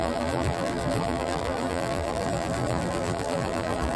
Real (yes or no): no